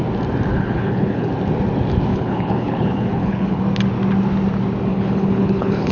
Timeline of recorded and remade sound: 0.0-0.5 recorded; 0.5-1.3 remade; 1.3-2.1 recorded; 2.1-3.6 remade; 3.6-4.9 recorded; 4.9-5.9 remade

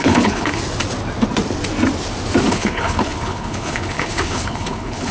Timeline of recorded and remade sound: 0.0-0.6 remade; 0.6-2.5 recorded; 2.5-5.1 remade

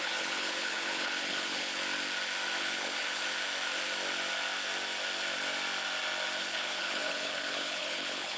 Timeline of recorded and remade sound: 0.0-1.8 remade; 1.8-2.6 recorded; 2.6-3.2 remade; 3.2-6.4 recorded; 6.4-8.4 remade

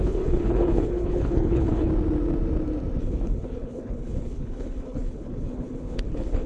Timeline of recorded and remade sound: 0.0-1.9 remade; 1.9-3.0 recorded; 3.0-6.5 remade

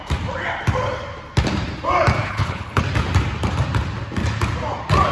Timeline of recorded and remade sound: 0.0-2.2 recorded; 2.2-2.8 remade; 2.8-5.1 recorded

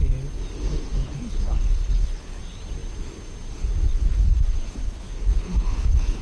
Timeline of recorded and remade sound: 0.0-1.0 recorded; 1.0-2.4 remade; 2.4-3.9 recorded; 3.9-6.2 remade